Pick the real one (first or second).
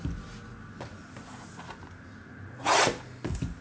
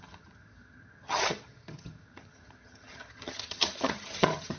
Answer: first